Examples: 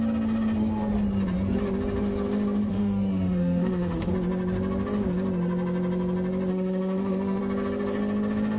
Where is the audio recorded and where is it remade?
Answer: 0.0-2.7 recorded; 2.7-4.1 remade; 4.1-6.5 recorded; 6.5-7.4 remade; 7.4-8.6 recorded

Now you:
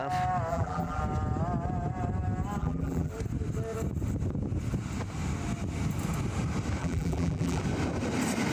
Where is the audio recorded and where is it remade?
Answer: 0.0-0.5 recorded; 0.5-1.0 remade; 1.0-2.6 recorded; 2.6-3.1 remade; 3.1-6.8 recorded; 6.8-7.6 remade; 7.6-8.5 recorded

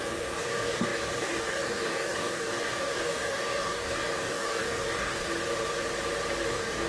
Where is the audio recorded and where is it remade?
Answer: 0.0-5.3 remade; 5.3-6.5 recorded; 6.5-6.9 remade

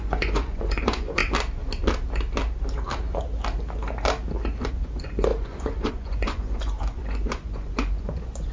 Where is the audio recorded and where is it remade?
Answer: 0.0-1.2 remade; 1.2-4.7 recorded; 4.7-8.5 remade

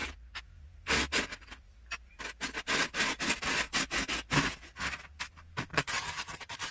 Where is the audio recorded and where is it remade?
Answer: 0.0-5.7 recorded; 5.7-6.7 remade

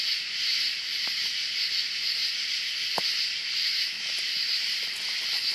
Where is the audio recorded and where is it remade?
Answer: 0.0-3.6 recorded; 3.6-4.1 remade; 4.1-5.5 recorded